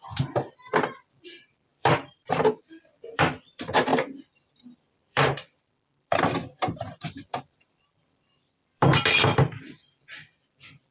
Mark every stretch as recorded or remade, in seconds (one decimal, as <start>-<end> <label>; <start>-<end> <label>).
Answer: 0.0-3.9 remade; 3.9-4.5 recorded; 4.5-10.9 remade